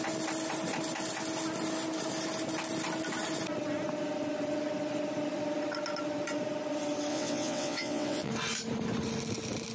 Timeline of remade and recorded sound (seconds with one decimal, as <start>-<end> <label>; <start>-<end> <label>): 0.0-7.1 recorded; 7.1-8.3 remade; 8.3-9.7 recorded